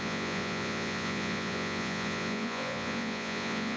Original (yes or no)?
no